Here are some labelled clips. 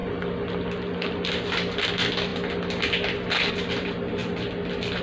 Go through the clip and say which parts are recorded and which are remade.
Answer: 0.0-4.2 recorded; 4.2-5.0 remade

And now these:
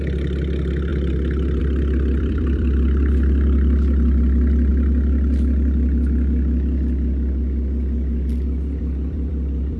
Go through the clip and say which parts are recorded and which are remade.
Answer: 0.0-0.9 remade; 0.9-1.6 recorded; 1.6-4.7 remade; 4.7-8.8 recorded; 8.8-9.8 remade

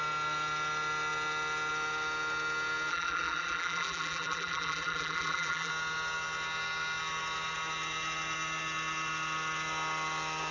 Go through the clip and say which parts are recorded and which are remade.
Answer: 0.0-2.9 recorded; 2.9-5.7 remade; 5.7-10.5 recorded